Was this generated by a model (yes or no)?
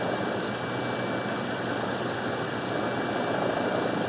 no